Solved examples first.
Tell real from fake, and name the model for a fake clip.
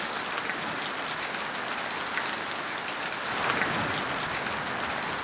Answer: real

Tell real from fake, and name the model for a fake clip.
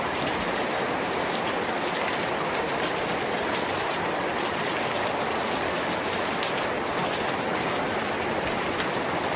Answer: real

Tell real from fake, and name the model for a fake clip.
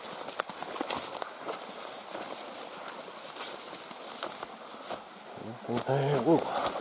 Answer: real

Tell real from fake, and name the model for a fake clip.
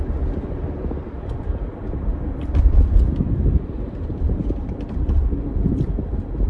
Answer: fake, vocoder, BigVGAN v2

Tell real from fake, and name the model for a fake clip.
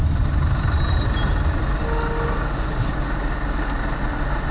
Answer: real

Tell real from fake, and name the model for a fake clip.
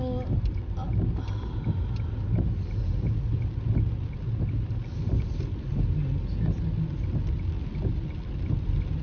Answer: real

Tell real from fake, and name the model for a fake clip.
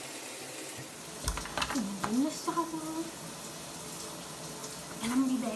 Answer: real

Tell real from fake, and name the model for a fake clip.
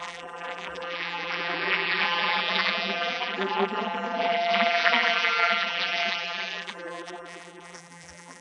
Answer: fake, vocoder, BigVGAN v2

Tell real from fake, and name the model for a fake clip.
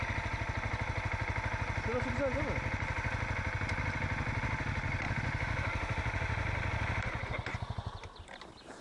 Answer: real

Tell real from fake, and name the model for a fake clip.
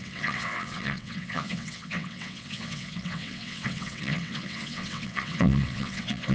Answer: fake, vocoder, WaveNeXt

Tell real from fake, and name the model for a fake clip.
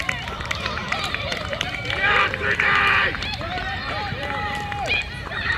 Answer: fake, vocoder, BigVGAN v2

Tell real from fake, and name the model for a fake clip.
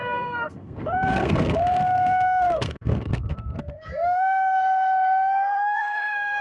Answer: fake, codec, SNAC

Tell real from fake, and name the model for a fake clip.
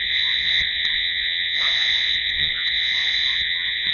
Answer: fake, vocoder, Vocos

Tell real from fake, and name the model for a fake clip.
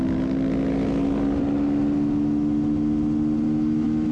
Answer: real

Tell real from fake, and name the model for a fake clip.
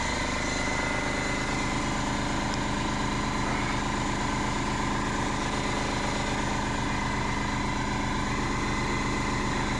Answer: real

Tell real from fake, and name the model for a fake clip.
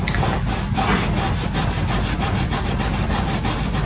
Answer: real